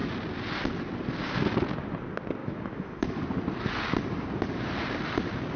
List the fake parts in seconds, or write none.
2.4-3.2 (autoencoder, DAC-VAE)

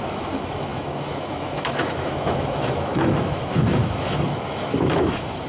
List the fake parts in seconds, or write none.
0.0-5.5 (autoencoder, DAC-VAE)